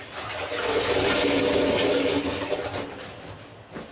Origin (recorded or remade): recorded